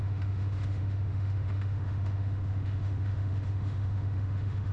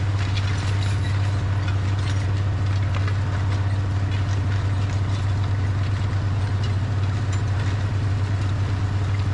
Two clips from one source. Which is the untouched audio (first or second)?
second